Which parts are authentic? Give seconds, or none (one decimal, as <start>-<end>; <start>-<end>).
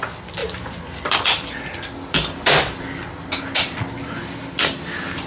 0.0-5.3